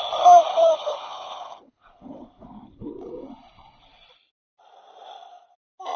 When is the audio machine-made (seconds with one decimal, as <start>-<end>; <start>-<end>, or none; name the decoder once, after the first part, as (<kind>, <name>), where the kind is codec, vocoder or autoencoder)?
0.5-2.9 (codec, HILCodec)